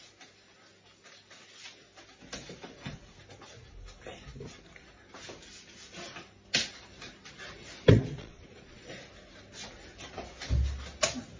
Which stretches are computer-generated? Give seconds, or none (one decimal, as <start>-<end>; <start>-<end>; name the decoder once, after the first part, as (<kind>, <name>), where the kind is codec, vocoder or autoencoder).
8.2-8.9 (vocoder, Vocos)